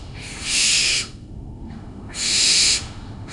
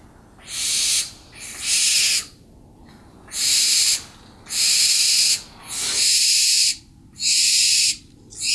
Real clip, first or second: second